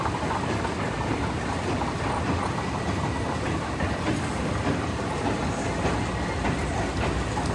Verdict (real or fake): real